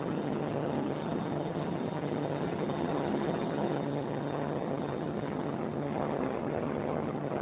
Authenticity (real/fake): fake